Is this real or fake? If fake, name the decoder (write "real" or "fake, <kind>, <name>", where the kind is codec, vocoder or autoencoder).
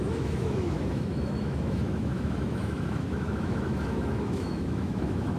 fake, autoencoder, DAC-VAE